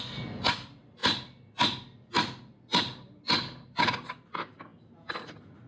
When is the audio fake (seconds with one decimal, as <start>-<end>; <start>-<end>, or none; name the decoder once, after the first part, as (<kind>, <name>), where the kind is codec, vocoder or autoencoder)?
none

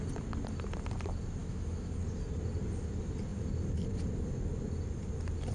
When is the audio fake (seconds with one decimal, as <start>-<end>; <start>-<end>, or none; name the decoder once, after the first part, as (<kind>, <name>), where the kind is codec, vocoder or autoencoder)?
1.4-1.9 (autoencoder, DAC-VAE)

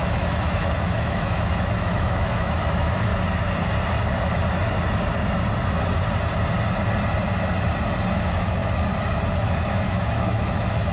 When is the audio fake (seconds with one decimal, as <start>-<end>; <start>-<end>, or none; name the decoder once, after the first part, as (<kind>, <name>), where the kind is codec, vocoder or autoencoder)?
0.0-3.1 (autoencoder, DAC-VAE); 8.1-8.6; 9.3-10.9

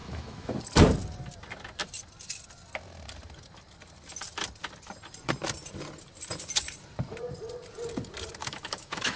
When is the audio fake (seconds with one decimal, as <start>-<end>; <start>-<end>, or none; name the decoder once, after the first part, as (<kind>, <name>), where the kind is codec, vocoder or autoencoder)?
0.0-0.6 (autoencoder, DAC-VAE); 8.4-9.2